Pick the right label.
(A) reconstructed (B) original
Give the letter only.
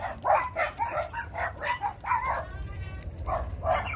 B